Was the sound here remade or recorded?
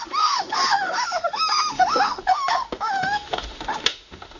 remade